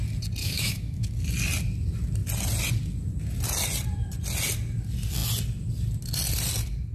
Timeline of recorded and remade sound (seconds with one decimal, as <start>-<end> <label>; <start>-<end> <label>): 0.0-0.4 recorded; 0.4-1.1 remade; 1.1-6.9 recorded

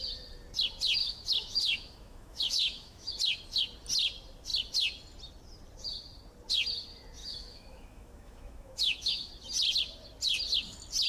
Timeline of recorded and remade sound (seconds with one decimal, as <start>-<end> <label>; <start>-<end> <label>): 0.0-1.0 recorded; 1.0-3.1 remade; 3.1-7.2 recorded; 7.2-9.3 remade; 9.3-11.1 recorded

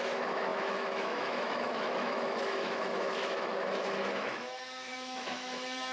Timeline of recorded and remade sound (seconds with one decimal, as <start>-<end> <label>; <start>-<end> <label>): 0.0-5.9 remade

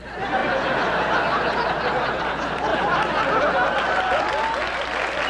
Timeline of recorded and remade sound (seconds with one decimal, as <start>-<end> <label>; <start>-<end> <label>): 0.0-5.3 recorded

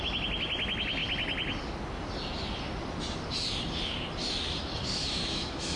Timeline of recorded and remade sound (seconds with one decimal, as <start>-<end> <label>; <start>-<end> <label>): 0.0-5.0 recorded; 5.0-5.8 remade

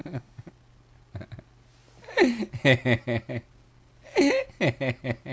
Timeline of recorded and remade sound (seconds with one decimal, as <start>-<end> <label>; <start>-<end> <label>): 0.0-0.5 remade; 0.5-5.3 recorded